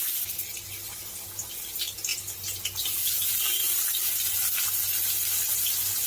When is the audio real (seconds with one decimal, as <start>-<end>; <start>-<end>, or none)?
0.0-6.1